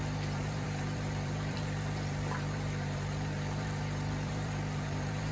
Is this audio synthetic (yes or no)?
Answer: yes